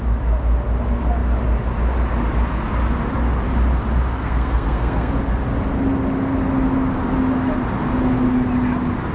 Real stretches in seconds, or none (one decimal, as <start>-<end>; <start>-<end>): 0.0-4.2; 5.1-9.1